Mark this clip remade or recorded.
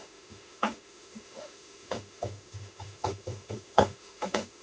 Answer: remade